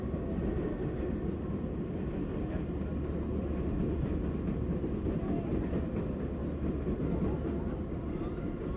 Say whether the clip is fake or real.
real